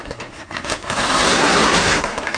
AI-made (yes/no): yes